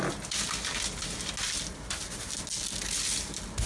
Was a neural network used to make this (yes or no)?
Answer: no